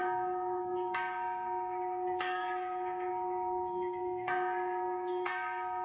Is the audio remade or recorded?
remade